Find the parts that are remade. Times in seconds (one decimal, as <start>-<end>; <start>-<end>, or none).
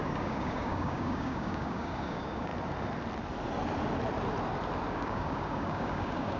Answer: 0.0-2.5; 4.9-6.4